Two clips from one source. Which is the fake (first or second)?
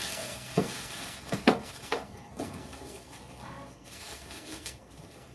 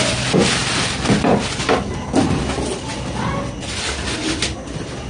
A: first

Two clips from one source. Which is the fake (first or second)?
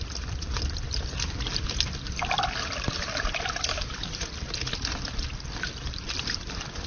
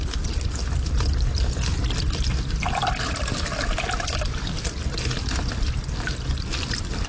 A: first